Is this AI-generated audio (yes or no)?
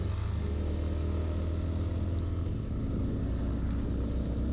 no